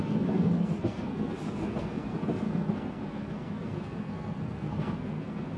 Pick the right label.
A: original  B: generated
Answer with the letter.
B